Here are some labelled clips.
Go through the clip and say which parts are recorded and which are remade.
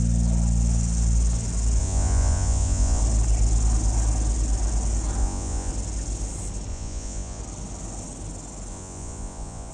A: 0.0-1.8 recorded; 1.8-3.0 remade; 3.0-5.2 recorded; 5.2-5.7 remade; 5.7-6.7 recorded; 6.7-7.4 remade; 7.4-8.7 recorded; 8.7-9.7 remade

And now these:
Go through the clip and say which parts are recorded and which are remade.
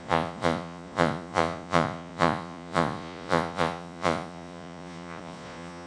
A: 0.0-5.9 remade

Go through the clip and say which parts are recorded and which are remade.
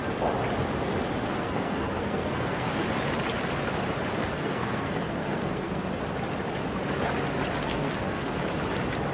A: 0.0-1.2 recorded; 1.2-2.7 remade; 2.7-4.2 recorded; 4.2-5.9 remade; 5.9-7.6 recorded; 7.6-8.3 remade; 8.3-9.1 recorded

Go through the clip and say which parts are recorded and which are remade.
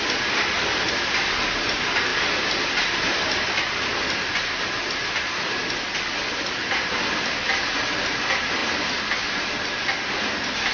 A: 0.0-10.7 recorded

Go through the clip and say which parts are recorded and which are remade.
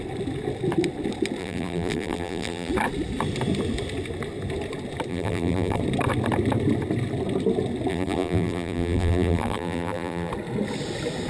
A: 0.0-1.4 recorded; 1.4-2.7 remade; 2.7-5.1 recorded; 5.1-5.8 remade; 5.8-7.9 recorded; 7.9-10.3 remade; 10.3-11.3 recorded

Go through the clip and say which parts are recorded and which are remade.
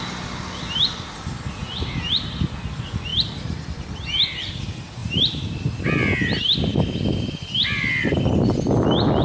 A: 0.0-9.2 recorded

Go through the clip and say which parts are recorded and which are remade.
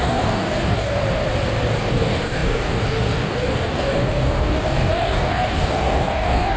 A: 0.0-1.0 remade; 1.0-1.8 recorded; 1.8-6.6 remade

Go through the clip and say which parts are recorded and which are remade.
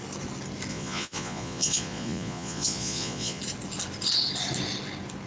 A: 0.0-0.7 recorded; 0.7-3.4 remade; 3.4-5.3 recorded